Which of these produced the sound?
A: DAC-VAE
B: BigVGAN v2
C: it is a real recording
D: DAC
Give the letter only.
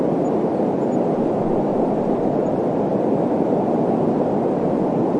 C